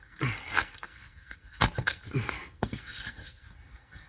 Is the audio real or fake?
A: fake